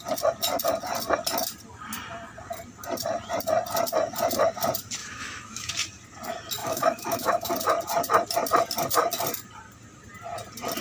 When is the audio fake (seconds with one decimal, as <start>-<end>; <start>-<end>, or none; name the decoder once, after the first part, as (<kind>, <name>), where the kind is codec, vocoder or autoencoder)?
5.0-5.7 (autoencoder, DAC-VAE); 6.6-7.5